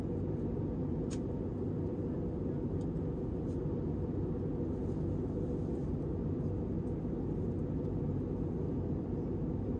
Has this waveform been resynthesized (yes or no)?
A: no